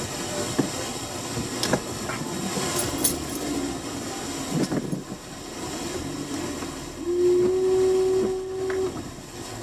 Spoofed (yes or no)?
no